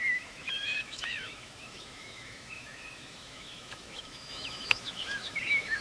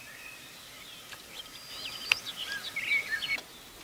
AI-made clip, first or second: first